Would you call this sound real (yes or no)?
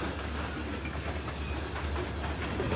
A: yes